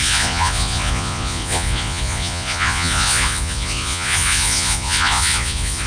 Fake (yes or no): yes